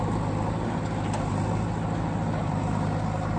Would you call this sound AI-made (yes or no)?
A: no